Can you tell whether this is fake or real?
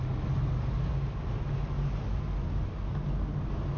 real